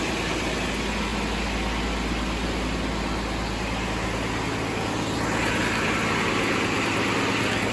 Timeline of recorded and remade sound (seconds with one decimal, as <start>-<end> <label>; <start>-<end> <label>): 0.0-7.7 recorded